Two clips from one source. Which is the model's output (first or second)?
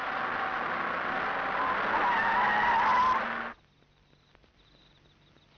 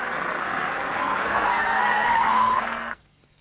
second